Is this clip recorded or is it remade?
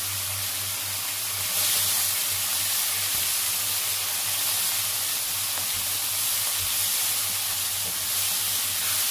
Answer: recorded